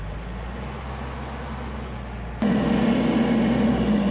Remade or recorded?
recorded